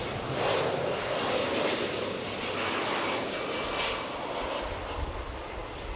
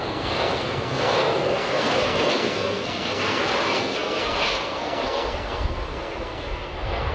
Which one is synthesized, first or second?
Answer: second